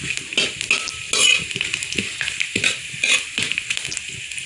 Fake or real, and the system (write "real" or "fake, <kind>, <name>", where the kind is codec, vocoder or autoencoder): real